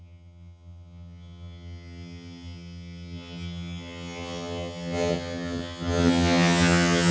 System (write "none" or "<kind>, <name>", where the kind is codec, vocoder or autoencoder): vocoder, HiFi-GAN